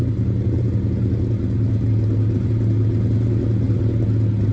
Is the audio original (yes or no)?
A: yes